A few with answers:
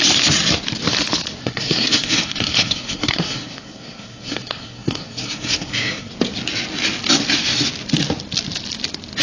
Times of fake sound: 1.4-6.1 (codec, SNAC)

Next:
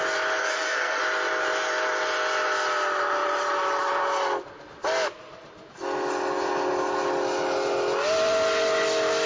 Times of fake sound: 0.4-1.0 (codec, SNAC)

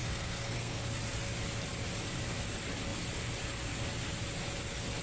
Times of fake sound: 0.0-0.8 (codec, SNAC)